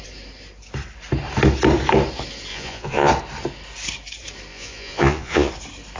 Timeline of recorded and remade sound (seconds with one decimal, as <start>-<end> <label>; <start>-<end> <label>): 0.0-2.5 recorded; 2.5-3.1 remade; 3.1-4.5 recorded; 4.5-5.5 remade; 5.5-6.0 recorded